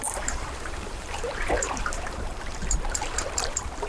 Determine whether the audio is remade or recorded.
remade